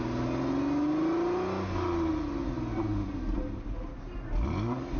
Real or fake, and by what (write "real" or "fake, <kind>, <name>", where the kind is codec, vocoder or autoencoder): real